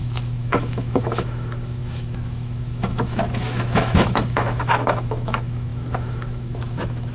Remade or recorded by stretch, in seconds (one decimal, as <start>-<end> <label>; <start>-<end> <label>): 0.0-7.1 remade